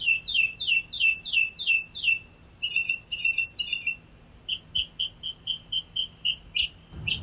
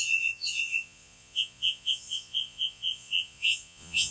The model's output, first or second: second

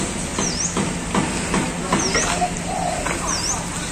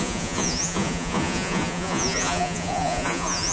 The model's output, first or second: second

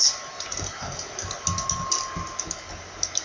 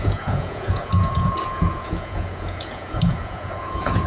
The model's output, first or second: second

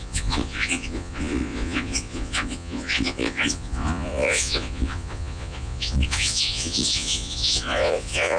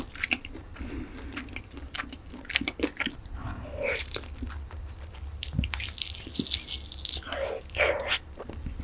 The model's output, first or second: first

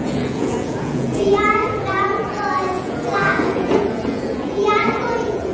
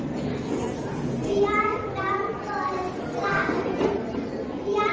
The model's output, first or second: first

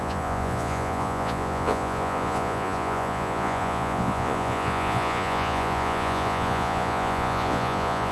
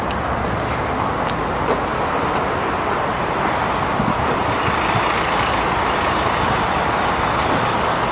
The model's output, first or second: first